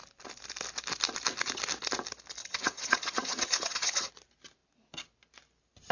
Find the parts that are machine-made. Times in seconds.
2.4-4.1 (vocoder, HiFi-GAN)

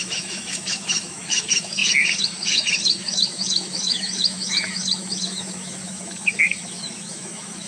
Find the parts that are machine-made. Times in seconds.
0.0-7.7 (autoencoder, DAC-VAE)

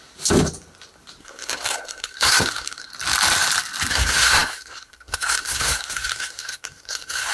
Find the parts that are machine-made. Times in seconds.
1.2-2.9 (codec, SNAC); 3.9-7.3